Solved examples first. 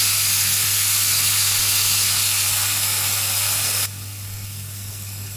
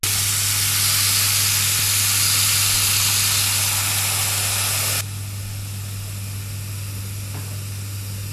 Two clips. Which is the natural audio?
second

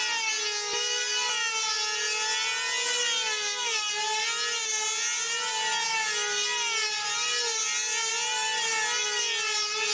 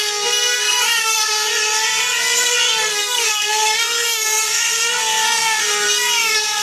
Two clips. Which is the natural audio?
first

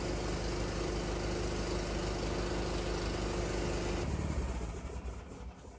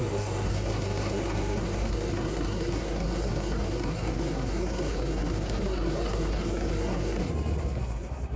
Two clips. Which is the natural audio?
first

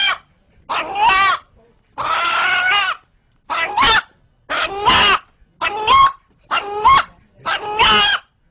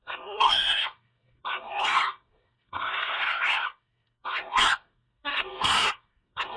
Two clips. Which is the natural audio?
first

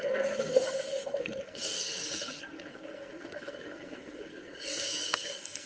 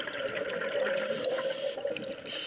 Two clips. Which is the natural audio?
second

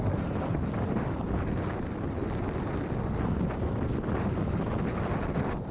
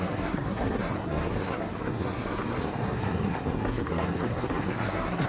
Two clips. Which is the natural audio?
first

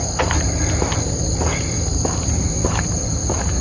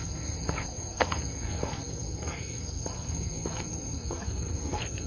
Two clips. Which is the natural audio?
first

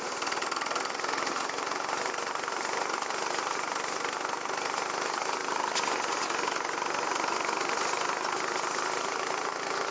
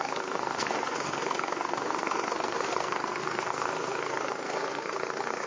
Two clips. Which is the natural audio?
first